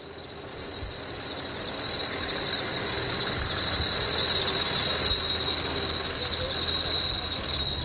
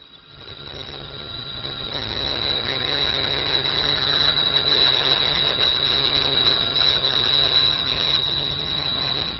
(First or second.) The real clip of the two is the first